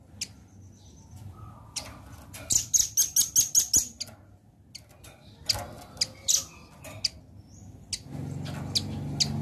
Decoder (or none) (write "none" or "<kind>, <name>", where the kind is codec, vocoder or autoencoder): none